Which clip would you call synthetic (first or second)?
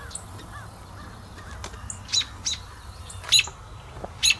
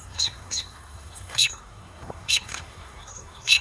second